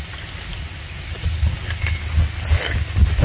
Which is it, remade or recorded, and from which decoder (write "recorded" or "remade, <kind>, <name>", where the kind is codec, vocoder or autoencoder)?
recorded